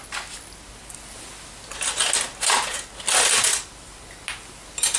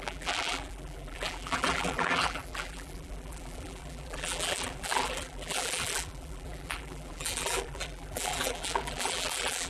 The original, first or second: first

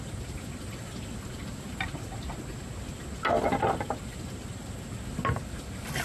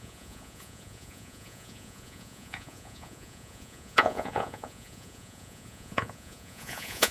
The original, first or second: first